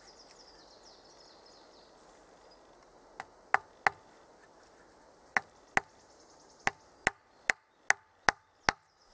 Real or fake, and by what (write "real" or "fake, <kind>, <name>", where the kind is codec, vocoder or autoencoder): real